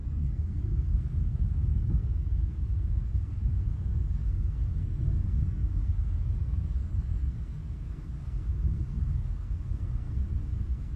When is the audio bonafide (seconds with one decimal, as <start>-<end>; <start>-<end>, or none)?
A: none